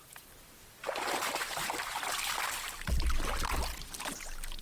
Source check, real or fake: real